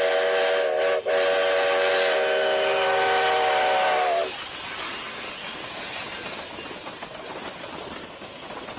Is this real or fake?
real